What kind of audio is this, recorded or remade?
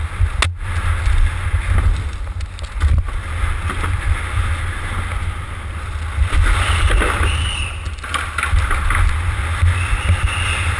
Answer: recorded